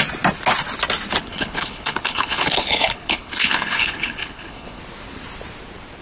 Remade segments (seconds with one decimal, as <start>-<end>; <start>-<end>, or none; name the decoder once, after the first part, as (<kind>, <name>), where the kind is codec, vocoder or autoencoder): 1.2-4.8 (codec, HILCodec)